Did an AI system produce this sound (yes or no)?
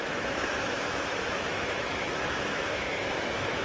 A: yes